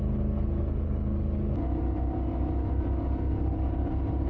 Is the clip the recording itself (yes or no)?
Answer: yes